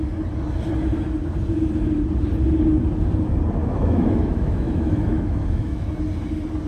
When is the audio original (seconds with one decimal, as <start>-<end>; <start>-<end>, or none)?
0.0-3.6; 6.0-6.7